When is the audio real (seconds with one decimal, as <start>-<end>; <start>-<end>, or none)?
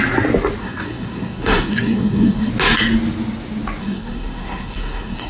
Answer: 0.0-0.6; 2.5-3.8